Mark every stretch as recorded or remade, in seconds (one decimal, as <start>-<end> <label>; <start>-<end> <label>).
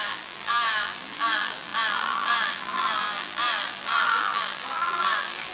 0.0-5.5 remade